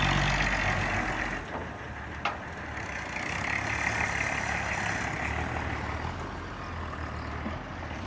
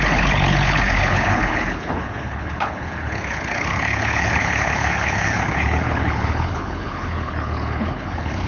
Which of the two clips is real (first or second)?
first